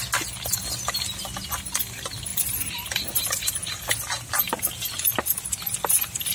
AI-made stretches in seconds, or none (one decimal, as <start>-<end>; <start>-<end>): none